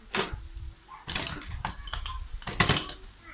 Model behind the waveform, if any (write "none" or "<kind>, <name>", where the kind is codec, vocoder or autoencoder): none